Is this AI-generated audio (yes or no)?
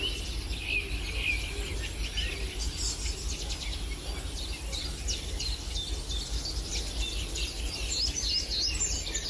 no